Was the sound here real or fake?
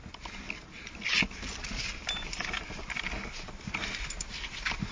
real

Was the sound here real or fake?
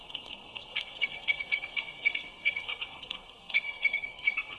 fake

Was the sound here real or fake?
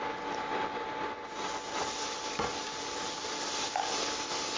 real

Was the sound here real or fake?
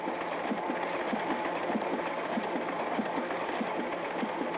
real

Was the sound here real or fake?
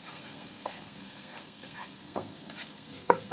fake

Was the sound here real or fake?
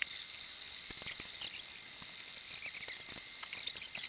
real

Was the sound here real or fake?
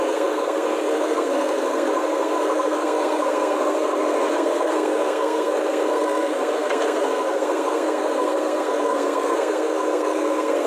fake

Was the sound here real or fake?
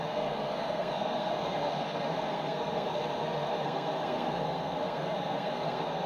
fake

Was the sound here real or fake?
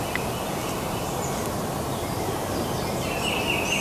real